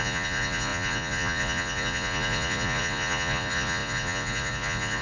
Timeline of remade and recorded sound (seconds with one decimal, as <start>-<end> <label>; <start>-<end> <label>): 0.0-5.0 remade